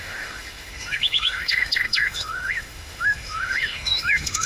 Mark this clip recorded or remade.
remade